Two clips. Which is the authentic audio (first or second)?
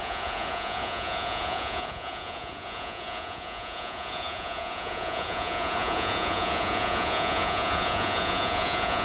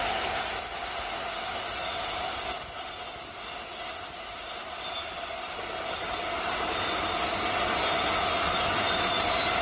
second